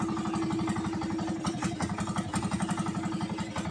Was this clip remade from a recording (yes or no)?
no